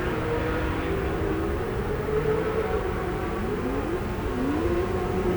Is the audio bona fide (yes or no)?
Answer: yes